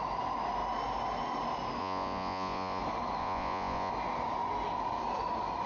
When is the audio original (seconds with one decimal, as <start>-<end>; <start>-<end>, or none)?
0.0-1.8; 2.8-3.2; 3.9-5.7